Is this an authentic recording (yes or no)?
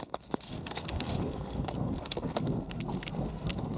no